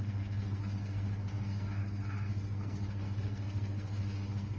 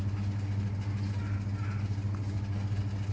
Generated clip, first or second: first